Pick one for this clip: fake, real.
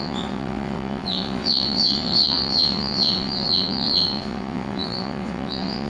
fake